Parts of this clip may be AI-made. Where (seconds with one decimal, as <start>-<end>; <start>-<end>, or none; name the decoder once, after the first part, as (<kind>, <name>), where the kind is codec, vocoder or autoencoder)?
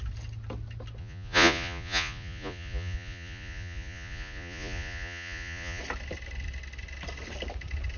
1.0-5.8 (vocoder, Vocos)